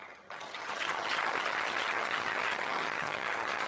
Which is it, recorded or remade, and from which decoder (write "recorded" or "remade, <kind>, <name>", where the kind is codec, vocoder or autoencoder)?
remade, vocoder, HiFi-GAN